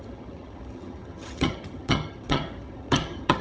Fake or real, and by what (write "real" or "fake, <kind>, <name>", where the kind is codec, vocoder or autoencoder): fake, vocoder, HiFi-GAN